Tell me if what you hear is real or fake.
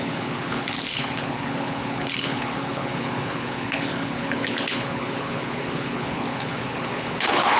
fake